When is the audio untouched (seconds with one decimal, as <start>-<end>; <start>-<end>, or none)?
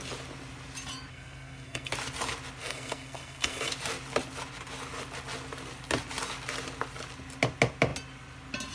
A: 0.0-1.1; 1.9-2.6; 3.7-8.7